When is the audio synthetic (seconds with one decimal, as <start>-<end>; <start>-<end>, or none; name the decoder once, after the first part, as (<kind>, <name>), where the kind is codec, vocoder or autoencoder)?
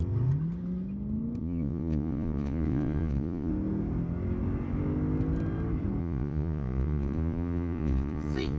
1.4-3.5 (vocoder, Vocos); 6.0-8.6